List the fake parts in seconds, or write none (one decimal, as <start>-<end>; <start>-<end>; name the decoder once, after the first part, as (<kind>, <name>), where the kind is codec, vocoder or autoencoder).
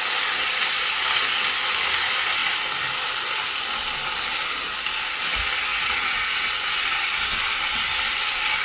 5.7-6.5 (vocoder, Vocos)